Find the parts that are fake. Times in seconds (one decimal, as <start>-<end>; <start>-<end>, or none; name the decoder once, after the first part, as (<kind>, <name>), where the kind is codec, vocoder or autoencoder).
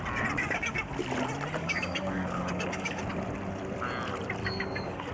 0.4-0.9 (codec, DAC); 1.6-3.0; 4.4-5.1